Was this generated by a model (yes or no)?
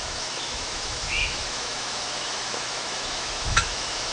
yes